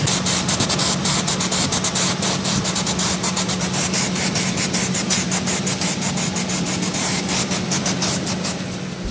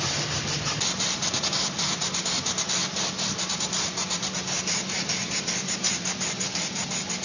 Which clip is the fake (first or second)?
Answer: second